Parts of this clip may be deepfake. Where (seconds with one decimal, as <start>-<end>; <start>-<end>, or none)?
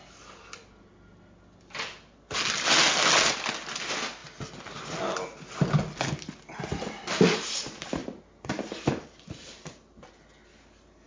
8.0-10.1